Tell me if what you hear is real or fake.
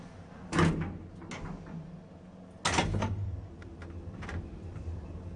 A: real